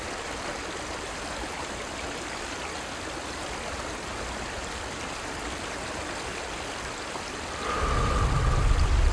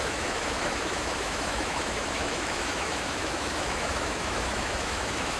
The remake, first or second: second